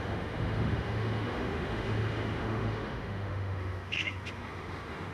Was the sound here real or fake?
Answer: fake